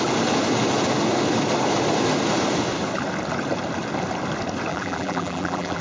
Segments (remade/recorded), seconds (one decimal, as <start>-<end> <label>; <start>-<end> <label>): 0.0-4.7 recorded; 4.7-5.8 remade